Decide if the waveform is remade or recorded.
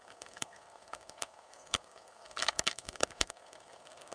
remade